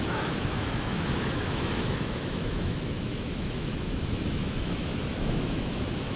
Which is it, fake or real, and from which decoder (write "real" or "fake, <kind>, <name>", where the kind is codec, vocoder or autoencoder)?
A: fake, autoencoder, DAC-VAE